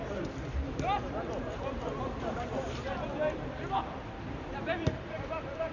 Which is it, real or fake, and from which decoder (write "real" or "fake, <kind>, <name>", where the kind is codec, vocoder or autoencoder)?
fake, vocoder, BigVGAN v2